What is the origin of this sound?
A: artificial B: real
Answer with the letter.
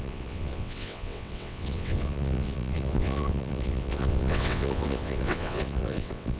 A